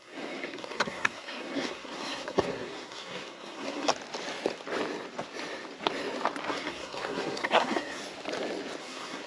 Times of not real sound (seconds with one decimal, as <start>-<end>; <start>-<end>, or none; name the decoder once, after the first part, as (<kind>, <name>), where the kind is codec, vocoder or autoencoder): 0.0-3.9 (codec, SNAC); 6.5-8.0; 8.8-9.3